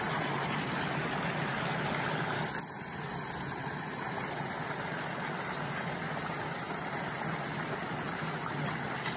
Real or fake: real